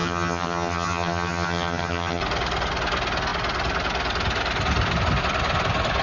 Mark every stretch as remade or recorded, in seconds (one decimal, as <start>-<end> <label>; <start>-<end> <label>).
0.0-2.2 remade; 2.2-6.0 recorded